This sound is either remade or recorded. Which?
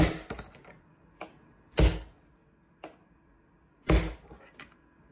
recorded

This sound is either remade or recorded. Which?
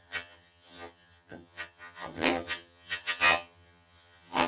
remade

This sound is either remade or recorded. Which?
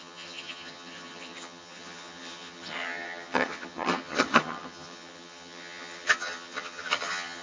remade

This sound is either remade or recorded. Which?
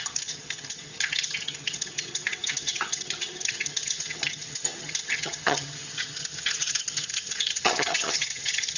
remade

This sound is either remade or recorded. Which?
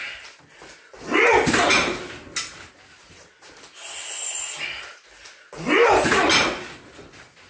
recorded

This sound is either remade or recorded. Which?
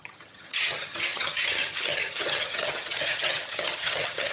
remade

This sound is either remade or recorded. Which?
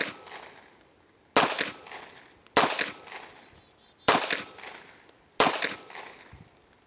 recorded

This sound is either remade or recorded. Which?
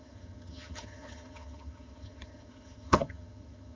remade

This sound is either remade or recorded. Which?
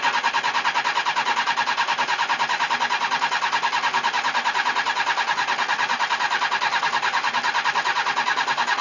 recorded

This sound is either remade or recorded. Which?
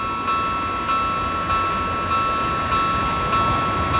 recorded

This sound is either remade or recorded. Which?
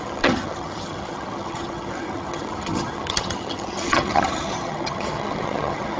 remade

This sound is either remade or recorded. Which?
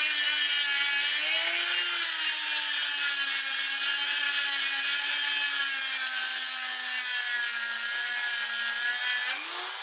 recorded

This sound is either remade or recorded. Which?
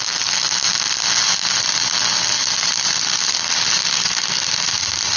recorded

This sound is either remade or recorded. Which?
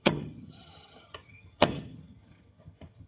remade